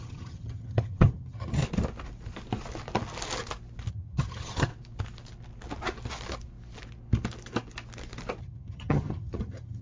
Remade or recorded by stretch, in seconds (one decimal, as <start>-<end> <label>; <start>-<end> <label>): 0.0-1.6 remade; 1.6-3.9 recorded; 3.9-4.7 remade; 4.7-8.4 recorded; 8.4-9.8 remade